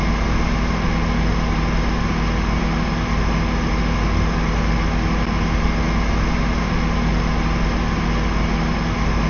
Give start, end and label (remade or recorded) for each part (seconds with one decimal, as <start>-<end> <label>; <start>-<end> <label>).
0.0-9.3 recorded